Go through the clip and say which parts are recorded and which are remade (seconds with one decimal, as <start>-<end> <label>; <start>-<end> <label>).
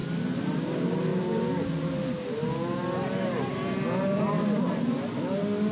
0.0-0.5 remade; 0.5-5.7 recorded